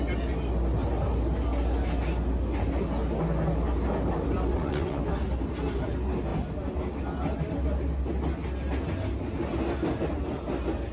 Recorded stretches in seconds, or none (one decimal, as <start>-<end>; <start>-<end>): 0.0-4.5; 5.0-10.9